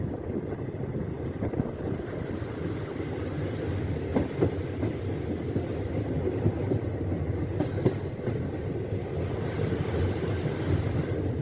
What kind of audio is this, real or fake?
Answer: real